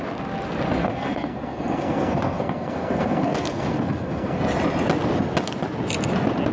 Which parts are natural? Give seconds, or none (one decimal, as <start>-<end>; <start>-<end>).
0.0-0.8; 4.4-6.5